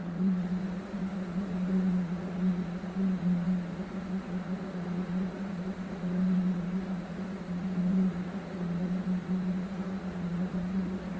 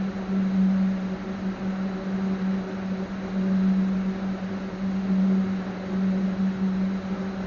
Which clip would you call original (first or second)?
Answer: second